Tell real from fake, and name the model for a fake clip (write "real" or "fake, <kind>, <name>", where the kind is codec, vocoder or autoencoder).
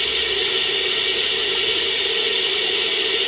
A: real